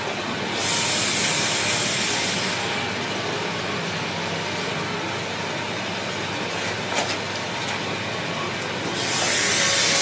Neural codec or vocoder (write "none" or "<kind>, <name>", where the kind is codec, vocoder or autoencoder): none